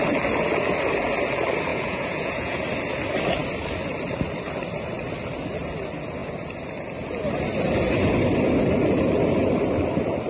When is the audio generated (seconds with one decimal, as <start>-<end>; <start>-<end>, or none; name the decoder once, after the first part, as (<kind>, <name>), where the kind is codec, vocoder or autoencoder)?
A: 1.7-2.6 (vocoder, Vocos)